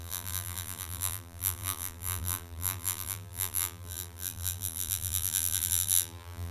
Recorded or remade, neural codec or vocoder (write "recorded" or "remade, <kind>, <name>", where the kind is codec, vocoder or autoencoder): remade, vocoder, BigVGAN v2